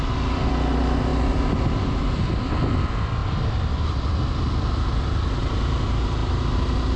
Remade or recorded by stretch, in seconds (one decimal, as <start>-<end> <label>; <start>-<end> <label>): 0.0-7.0 recorded